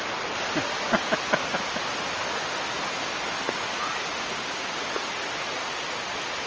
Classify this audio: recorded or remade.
recorded